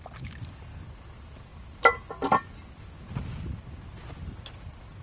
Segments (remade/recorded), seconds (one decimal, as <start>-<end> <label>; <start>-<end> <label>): 0.0-5.0 recorded